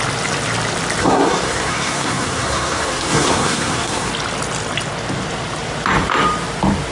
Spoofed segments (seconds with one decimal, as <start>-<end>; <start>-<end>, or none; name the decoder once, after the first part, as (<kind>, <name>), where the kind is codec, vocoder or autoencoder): 1.0-4.1 (codec, SNAC)